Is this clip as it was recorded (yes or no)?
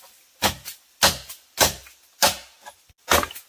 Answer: yes